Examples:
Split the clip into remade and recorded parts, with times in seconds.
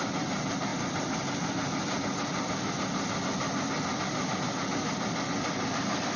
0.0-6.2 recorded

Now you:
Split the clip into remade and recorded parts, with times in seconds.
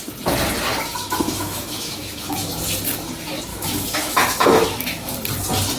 0.0-0.9 recorded; 0.9-2.5 remade; 2.5-3.5 recorded; 3.5-5.1 remade; 5.1-5.8 recorded